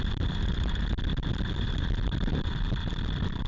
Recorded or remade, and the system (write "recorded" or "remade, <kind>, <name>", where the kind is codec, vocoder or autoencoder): remade, vocoder, BigVGAN v2